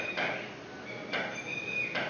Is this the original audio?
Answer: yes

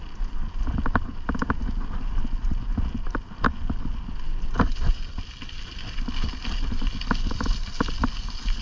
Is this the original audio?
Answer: yes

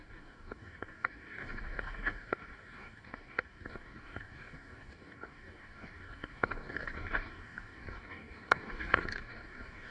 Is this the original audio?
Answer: no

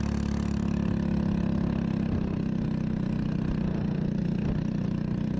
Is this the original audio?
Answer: yes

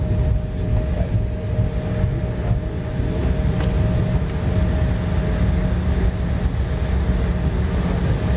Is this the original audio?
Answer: yes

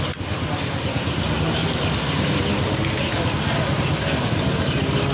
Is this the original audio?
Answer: yes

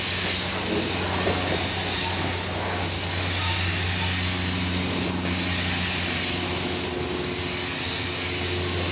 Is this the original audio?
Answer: yes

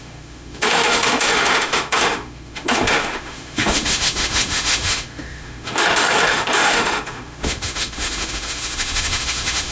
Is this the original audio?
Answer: no